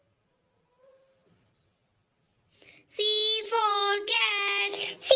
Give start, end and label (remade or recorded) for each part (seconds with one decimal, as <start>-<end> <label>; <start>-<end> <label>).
0.0-3.4 recorded; 3.4-4.3 remade; 4.3-5.2 recorded